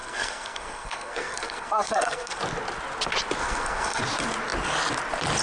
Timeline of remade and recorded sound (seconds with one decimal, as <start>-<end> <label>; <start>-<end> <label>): 0.0-2.4 remade; 2.4-3.4 recorded; 3.4-4.0 remade; 4.0-5.4 recorded